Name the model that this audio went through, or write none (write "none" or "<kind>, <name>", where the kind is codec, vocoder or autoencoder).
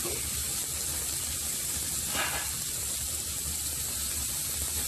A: none